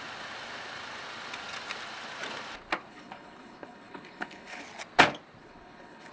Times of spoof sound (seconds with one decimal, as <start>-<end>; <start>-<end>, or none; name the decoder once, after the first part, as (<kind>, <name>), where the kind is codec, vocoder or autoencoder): 2.9-4.6 (codec, HILCodec); 5.4-6.1